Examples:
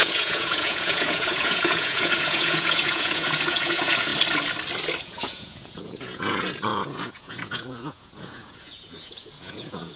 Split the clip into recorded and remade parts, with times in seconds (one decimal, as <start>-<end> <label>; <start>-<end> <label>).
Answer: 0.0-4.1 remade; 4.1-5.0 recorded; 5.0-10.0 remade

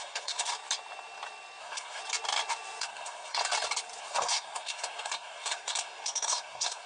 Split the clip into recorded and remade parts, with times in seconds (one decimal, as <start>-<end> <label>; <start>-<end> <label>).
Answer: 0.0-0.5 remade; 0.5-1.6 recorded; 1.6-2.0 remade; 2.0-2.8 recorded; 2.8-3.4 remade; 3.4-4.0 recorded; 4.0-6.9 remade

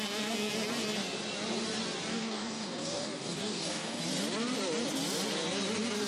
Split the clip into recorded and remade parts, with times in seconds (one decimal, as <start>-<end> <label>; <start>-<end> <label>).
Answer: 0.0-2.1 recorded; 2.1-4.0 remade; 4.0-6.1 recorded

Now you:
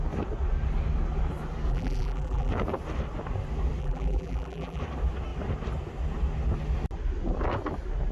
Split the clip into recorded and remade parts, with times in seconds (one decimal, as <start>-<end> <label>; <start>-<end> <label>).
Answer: 0.0-1.7 recorded; 1.7-2.5 remade; 2.5-3.8 recorded; 3.8-4.8 remade; 4.8-8.1 recorded

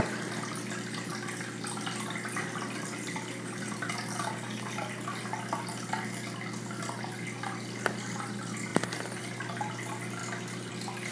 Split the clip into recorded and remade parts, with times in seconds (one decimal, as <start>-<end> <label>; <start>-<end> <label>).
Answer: 0.0-11.1 recorded

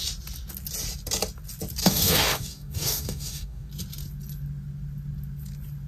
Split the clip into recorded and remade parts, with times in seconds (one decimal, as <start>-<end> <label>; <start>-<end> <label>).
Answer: 0.0-1.8 recorded; 1.8-3.7 remade; 3.7-5.9 recorded

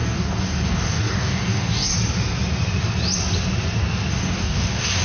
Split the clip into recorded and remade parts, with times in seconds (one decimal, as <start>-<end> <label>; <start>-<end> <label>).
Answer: 0.0-1.9 remade; 1.9-4.1 recorded; 4.1-5.0 remade